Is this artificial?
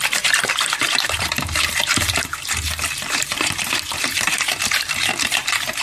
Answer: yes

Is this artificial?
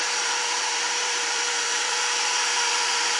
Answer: yes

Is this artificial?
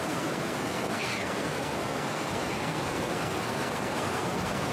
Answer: yes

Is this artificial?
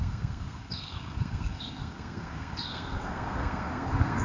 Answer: yes